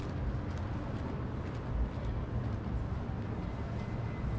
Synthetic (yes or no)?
no